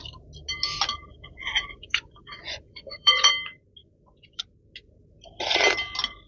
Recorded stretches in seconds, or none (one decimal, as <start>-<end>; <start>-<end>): 0.0-1.1; 3.3-3.8; 4.4-6.3